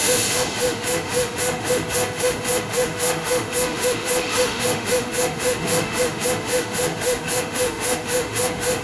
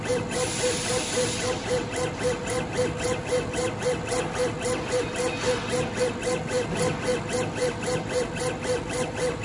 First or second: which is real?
second